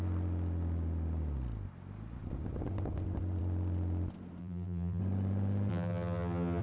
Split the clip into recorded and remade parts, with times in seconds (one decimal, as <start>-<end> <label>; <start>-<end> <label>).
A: 0.0-4.4 recorded; 4.4-5.0 remade; 5.0-5.7 recorded; 5.7-6.6 remade